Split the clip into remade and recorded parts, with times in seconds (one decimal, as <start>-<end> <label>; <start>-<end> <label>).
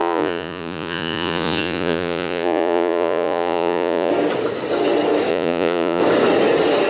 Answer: 0.0-4.1 remade; 4.1-5.3 recorded; 5.3-6.0 remade; 6.0-6.9 recorded